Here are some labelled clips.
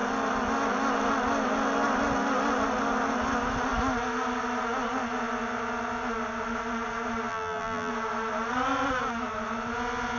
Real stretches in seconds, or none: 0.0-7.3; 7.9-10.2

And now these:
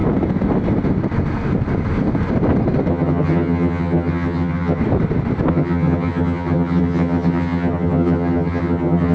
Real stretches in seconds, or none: 0.0-2.9; 4.8-5.5

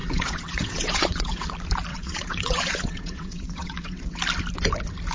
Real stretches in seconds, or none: 1.5-1.9; 4.2-5.1

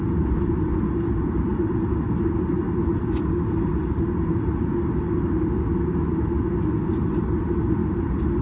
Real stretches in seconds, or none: 0.0-8.4

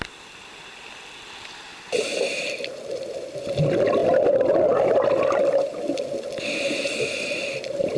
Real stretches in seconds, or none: 4.0-5.1